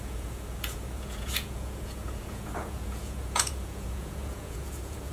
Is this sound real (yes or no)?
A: no